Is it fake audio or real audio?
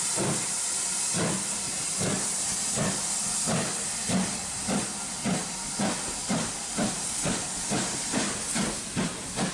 real